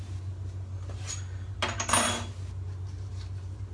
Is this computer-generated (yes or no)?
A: no